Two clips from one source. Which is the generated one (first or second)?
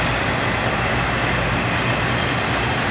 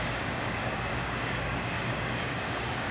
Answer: second